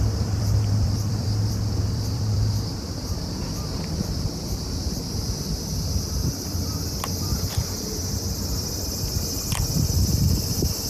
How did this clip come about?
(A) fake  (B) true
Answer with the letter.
A